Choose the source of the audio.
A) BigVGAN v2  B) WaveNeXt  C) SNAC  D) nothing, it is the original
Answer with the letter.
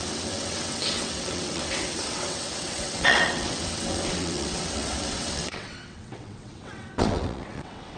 B